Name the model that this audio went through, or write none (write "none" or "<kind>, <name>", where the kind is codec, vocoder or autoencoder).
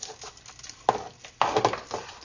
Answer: none